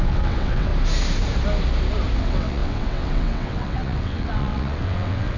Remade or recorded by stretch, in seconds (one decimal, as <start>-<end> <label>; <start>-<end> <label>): 0.0-0.7 remade; 0.7-2.2 recorded; 2.2-5.4 remade

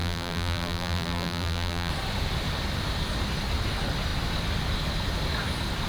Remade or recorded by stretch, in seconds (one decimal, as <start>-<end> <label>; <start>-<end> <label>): 0.0-1.9 remade; 1.9-5.9 recorded

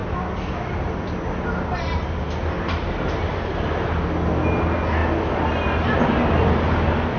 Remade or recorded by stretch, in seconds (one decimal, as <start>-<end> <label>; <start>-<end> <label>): 0.0-7.2 recorded

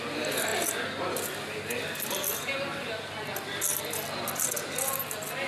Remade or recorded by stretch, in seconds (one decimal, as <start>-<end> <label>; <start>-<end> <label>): 0.0-5.5 recorded

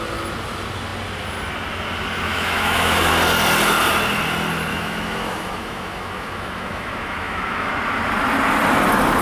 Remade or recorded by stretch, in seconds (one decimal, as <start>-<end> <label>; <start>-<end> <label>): 0.0-2.3 recorded; 2.3-3.1 remade; 3.1-4.7 recorded; 4.7-7.7 remade; 7.7-9.2 recorded

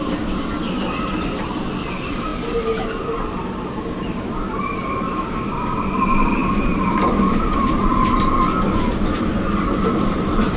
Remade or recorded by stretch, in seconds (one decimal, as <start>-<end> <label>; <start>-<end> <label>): 0.0-2.3 remade; 2.3-3.0 recorded; 3.0-7.9 remade; 7.9-9.3 recorded; 9.3-10.6 remade

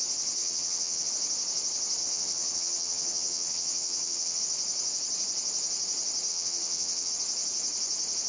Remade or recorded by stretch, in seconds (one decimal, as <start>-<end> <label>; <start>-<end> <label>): 0.0-0.4 recorded; 0.4-1.1 remade; 1.1-2.0 recorded; 2.0-4.4 remade; 4.4-6.3 recorded; 6.3-7.1 remade; 7.1-8.3 recorded

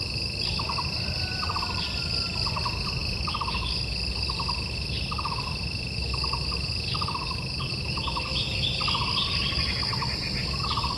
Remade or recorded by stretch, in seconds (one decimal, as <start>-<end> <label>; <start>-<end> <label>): 0.0-11.0 recorded